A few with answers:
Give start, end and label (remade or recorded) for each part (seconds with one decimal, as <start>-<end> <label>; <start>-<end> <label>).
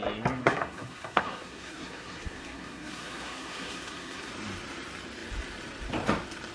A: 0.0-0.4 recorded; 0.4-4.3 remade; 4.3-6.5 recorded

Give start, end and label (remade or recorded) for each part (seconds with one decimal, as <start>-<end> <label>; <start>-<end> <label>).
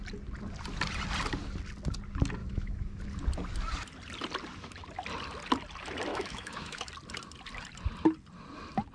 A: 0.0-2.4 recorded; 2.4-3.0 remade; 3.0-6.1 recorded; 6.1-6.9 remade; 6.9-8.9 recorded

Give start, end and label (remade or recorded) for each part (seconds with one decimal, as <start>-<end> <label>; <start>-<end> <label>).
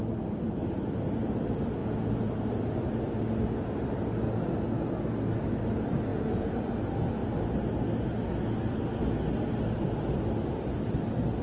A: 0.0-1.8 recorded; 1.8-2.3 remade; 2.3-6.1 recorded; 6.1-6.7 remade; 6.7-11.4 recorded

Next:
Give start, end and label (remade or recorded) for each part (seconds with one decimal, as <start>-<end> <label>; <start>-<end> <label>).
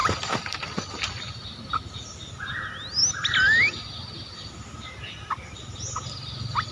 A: 0.0-6.7 recorded